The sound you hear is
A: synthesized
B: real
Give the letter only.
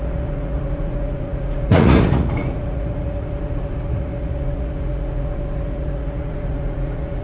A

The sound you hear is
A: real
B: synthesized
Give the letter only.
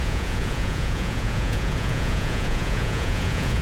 B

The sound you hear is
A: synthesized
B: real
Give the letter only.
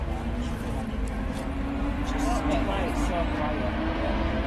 B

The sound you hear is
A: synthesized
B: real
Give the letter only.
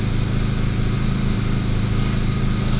B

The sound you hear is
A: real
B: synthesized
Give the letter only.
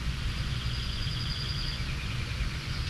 B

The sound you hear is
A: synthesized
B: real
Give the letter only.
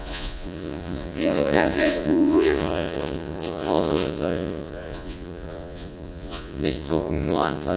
A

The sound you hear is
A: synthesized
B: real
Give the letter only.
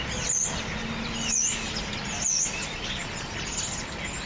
B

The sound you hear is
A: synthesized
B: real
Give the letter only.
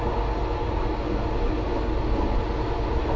B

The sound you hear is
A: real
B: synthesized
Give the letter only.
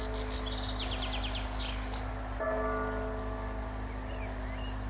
A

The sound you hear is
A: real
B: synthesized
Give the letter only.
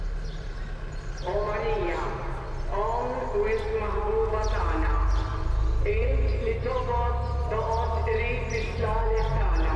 A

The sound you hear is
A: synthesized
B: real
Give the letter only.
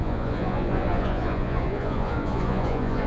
A